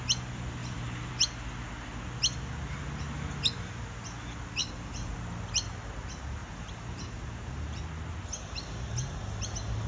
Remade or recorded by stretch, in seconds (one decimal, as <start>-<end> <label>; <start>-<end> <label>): 0.0-0.6 recorded; 0.6-1.1 remade; 1.1-4.6 recorded; 4.6-5.2 remade; 5.2-6.4 recorded; 6.4-7.8 remade; 7.8-9.9 recorded